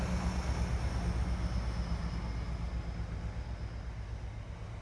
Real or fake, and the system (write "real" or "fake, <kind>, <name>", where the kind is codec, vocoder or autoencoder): real